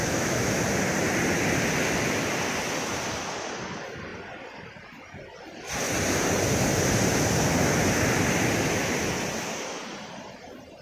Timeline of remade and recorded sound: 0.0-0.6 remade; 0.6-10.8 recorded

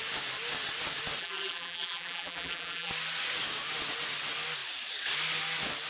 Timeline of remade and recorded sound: 0.0-1.2 recorded; 1.2-2.9 remade; 2.9-5.9 recorded